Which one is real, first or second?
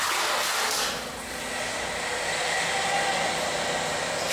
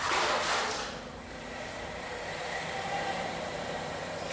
first